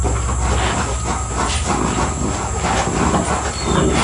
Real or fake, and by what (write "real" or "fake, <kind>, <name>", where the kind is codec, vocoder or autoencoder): real